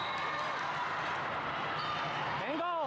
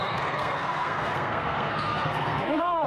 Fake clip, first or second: second